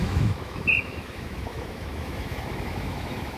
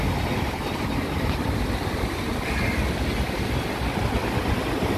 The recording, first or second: second